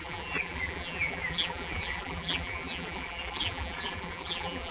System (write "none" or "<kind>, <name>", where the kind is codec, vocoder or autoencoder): vocoder, BigVGAN v2